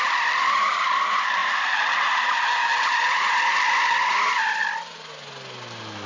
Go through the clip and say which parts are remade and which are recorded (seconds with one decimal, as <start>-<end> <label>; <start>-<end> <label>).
0.0-6.1 recorded